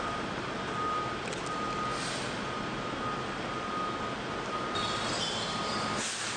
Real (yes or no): yes